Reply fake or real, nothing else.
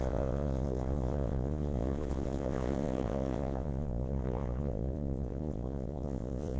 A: fake